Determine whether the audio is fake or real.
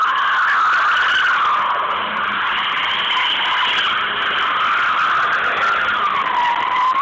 real